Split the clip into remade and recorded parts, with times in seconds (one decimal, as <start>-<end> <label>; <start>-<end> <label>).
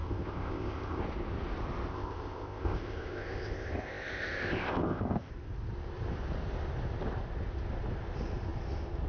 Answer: 0.0-1.0 remade; 1.0-1.9 recorded; 1.9-5.3 remade; 5.3-9.1 recorded